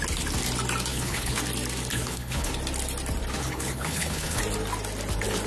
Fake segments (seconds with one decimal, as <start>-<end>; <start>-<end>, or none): 0.9-1.4; 1.9-2.5; 3.4-4.4